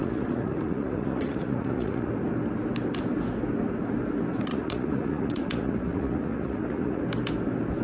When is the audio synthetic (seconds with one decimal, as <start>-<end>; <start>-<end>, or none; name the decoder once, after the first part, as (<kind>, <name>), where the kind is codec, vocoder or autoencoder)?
0.0-2.1 (vocoder, Vocos); 4.5-7.0